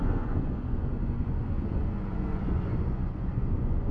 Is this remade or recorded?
remade